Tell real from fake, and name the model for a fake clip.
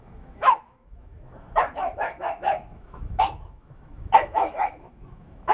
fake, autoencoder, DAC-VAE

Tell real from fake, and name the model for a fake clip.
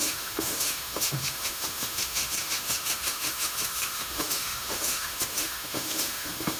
fake, autoencoder, DAC-VAE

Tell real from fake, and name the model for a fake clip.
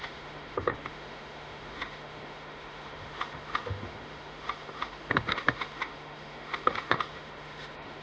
fake, autoencoder, DAC-VAE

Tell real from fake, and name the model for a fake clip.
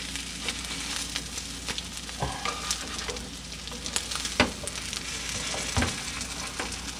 real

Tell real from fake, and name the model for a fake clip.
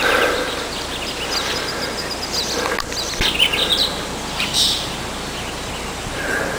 real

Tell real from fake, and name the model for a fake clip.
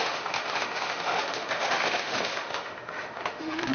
fake, autoencoder, DAC-VAE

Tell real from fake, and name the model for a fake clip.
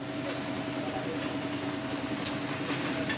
real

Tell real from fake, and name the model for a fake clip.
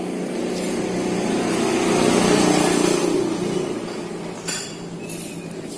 real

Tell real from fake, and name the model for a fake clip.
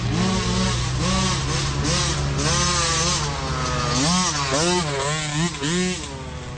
real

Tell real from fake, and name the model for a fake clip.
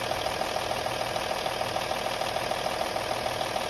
real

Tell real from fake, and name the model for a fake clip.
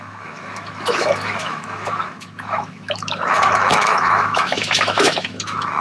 fake, autoencoder, DAC-VAE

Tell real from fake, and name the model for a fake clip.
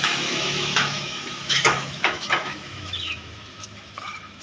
fake, autoencoder, DAC-VAE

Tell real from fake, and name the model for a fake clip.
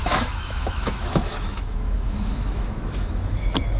fake, autoencoder, DAC-VAE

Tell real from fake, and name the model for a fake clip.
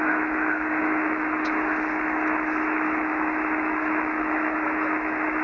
fake, autoencoder, DAC-VAE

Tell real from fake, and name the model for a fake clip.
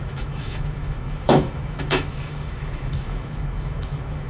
fake, autoencoder, DAC-VAE